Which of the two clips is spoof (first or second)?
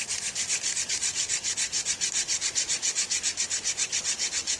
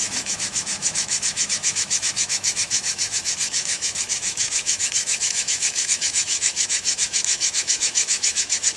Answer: second